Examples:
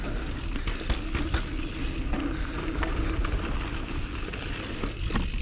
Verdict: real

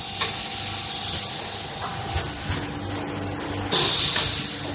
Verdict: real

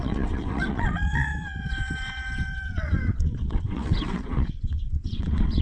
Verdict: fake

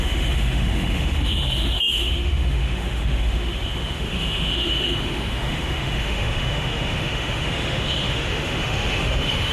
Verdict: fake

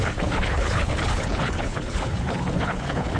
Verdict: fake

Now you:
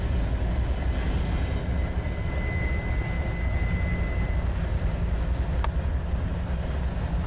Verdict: real